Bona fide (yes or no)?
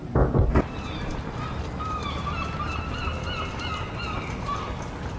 yes